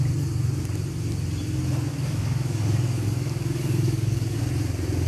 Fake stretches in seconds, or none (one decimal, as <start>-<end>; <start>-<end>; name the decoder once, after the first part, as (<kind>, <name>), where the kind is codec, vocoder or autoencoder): 1.9-4.4 (codec, DAC)